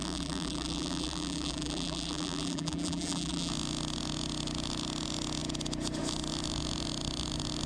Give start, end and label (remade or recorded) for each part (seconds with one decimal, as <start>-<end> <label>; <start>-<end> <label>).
0.0-3.5 remade; 3.5-7.7 recorded